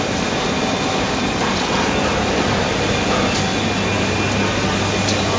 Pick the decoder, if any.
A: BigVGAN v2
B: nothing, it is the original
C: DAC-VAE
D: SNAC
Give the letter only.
B